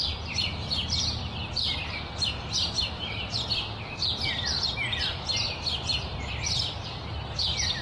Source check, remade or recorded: recorded